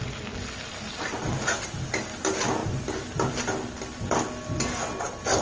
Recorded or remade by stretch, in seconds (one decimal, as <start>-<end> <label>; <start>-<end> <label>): 0.0-5.4 recorded